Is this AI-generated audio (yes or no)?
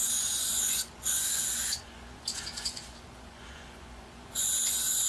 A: yes